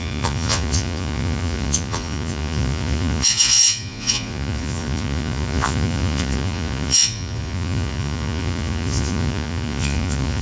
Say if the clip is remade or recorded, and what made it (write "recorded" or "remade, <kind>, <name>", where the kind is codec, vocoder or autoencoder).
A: remade, vocoder, Vocos